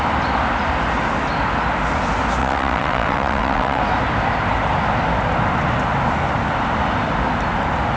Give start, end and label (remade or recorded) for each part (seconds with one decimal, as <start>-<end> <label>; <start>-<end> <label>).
0.0-2.4 recorded; 2.4-3.8 remade; 3.8-8.0 recorded